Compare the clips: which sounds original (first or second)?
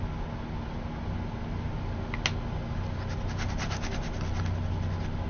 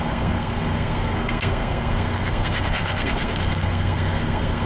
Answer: first